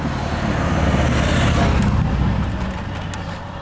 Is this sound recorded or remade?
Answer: recorded